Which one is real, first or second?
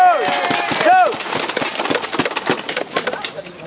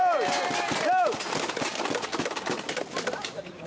first